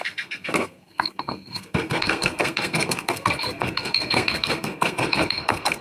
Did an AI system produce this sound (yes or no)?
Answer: yes